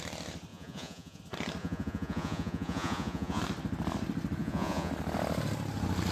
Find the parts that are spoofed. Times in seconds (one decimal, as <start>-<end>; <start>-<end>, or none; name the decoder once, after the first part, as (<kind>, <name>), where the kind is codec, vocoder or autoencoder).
0.5-1.2 (vocoder, Vocos); 1.6-3.4; 4.4-4.9